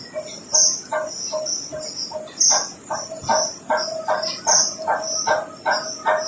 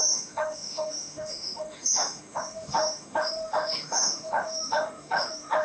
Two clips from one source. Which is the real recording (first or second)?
first